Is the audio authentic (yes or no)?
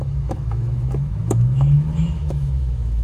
no